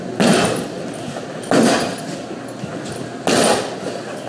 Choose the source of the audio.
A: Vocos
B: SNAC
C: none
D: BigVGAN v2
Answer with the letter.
C